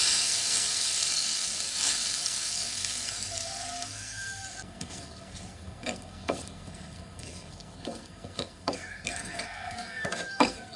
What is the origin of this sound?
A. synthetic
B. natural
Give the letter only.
A